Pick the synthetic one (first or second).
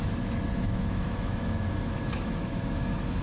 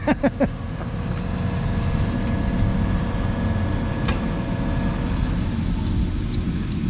first